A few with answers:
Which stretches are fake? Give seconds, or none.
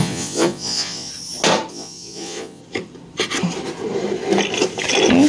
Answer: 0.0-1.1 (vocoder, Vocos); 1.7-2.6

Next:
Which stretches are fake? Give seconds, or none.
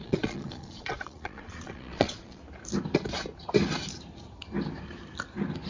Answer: 0.0-2.4 (vocoder, Vocos)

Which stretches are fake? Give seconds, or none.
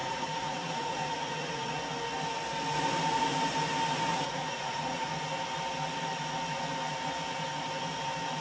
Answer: 0.0-1.8 (vocoder, Vocos); 4.1-5.1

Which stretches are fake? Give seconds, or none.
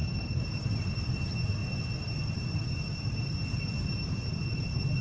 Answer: none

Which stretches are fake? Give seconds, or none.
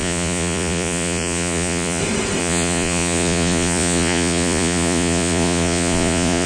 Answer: 0.0-2.0 (vocoder, Vocos); 2.4-6.5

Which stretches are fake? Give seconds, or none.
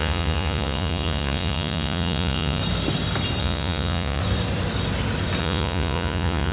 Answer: 0.0-2.6 (vocoder, Vocos); 3.4-4.2; 5.4-6.5